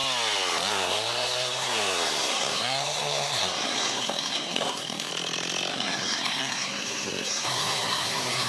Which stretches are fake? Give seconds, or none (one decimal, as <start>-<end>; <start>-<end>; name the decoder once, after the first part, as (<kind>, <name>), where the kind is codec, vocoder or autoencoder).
0.7-5.1 (codec, SNAC); 5.7-8.5